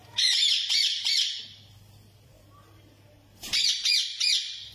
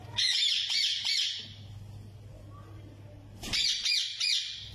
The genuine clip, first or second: second